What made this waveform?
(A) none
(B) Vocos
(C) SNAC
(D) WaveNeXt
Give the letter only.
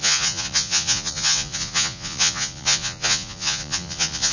B